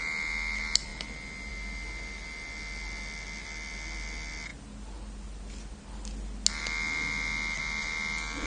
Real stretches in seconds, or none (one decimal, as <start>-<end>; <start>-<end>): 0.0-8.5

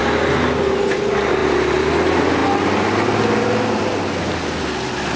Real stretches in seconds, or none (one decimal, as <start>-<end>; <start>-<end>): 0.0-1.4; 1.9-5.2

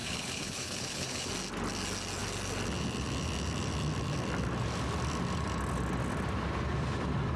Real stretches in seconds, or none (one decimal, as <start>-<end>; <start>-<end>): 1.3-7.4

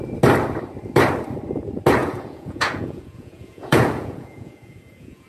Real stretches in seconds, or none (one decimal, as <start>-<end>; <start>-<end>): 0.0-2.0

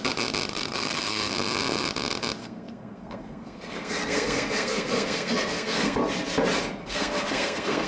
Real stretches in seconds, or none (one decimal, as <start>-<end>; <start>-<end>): 0.0-0.5; 1.3-2.4; 6.0-6.8

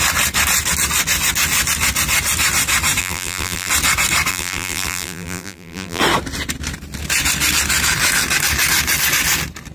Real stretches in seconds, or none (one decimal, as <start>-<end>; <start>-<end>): 0.0-3.0; 3.7-4.3; 6.0-9.7

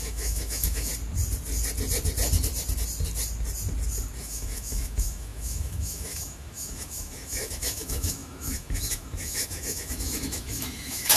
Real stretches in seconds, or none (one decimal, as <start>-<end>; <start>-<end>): 0.9-4.2